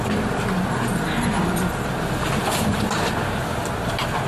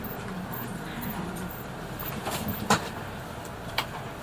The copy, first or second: second